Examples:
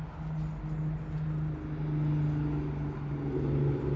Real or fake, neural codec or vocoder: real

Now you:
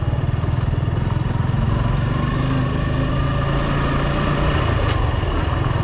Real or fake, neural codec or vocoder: real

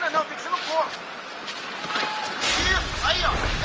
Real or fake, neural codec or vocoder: real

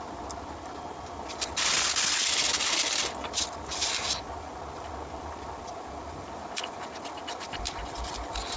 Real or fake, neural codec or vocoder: real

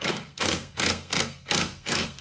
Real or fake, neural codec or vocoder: fake, codec, SNAC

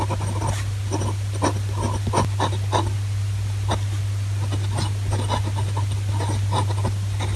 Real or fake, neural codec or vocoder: real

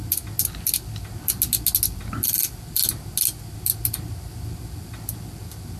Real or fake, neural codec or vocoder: real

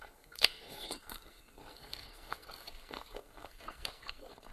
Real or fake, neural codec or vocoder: fake, codec, SNAC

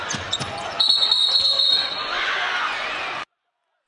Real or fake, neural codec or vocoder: fake, vocoder, Vocos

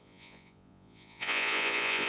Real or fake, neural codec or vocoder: fake, vocoder, Vocos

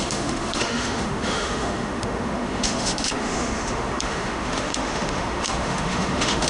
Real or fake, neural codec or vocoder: fake, autoencoder, DAC-VAE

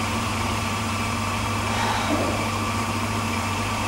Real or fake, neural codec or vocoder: fake, vocoder, BigVGAN v2